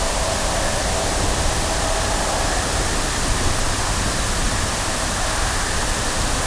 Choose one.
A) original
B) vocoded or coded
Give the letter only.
A